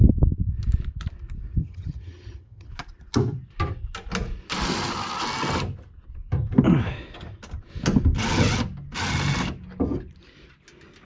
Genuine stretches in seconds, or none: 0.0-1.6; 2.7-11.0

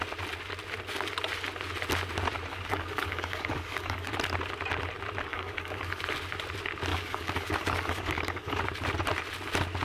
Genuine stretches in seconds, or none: 0.0-2.5; 4.1-5.3; 6.0-6.9; 8.6-9.8

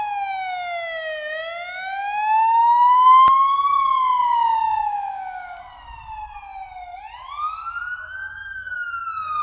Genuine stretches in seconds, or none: 0.0-2.6; 3.3-4.6; 5.6-9.4

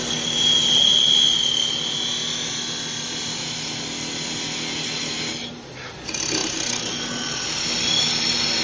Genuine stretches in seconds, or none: 0.0-8.6

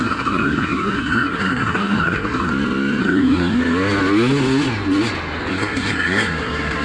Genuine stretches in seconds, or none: 2.5-3.0; 3.6-5.5

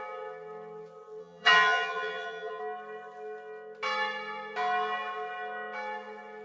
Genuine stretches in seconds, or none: 0.0-1.2; 2.6-6.4

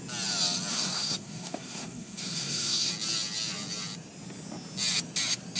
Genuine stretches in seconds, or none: 0.0-0.7; 2.9-5.6